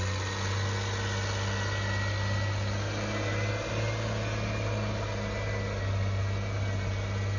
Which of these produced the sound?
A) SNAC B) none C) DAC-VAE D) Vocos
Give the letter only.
B